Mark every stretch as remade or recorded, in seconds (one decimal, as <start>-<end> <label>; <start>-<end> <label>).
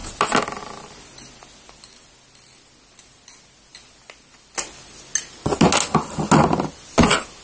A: 0.0-7.4 recorded